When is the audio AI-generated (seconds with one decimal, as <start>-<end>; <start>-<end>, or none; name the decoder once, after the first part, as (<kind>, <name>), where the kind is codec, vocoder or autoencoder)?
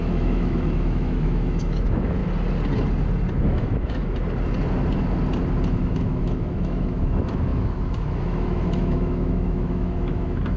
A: 0.0-2.2 (autoencoder, DAC-VAE); 3.3-4.2; 5.7-10.6